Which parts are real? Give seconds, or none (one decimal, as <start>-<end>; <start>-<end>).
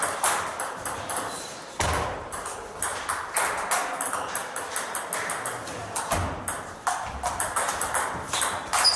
0.0-9.0